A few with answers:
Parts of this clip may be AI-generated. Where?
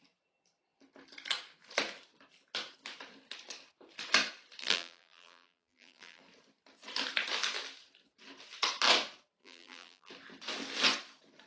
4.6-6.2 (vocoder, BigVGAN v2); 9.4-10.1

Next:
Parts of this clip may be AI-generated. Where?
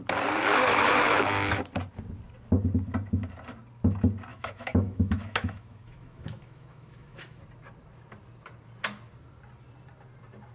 0.5-1.6 (autoencoder, DAC-VAE); 4.3-7.4